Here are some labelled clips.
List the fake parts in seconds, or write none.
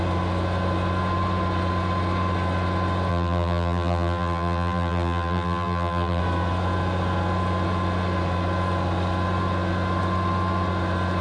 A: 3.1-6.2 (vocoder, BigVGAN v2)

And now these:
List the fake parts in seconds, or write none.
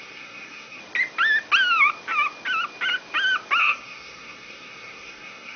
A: 0.0-0.8 (codec, SNAC); 3.6-5.6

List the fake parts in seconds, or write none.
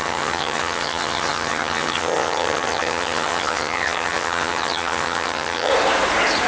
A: 0.0-5.7 (vocoder, HiFi-GAN)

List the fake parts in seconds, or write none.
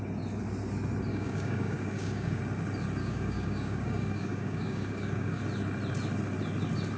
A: 1.1-2.4 (codec, DAC); 3.0-5.4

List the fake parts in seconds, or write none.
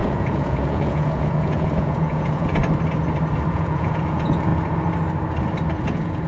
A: 0.0-2.6 (vocoder, Vocos); 3.5-4.5; 5.7-6.3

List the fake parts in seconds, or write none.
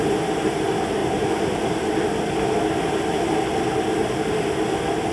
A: none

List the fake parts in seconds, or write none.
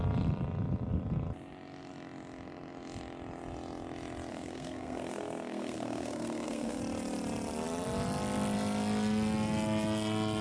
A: 4.3-6.8 (codec, SNAC)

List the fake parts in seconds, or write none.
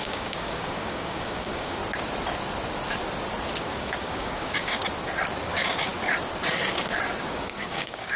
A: 0.0-1.8 (codec, DAC); 3.6-4.8; 5.4-5.9; 7.3-8.2